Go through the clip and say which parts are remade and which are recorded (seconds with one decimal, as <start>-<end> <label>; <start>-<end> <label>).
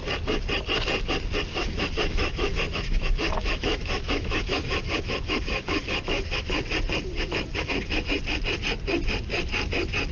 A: 0.0-1.5 recorded; 1.5-6.6 remade; 6.6-7.1 recorded; 7.1-8.2 remade; 8.2-10.1 recorded